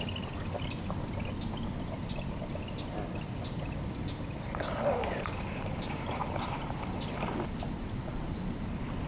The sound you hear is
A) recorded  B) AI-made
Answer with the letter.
A